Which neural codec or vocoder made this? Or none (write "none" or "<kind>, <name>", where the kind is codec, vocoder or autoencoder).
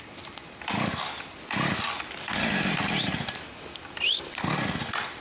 none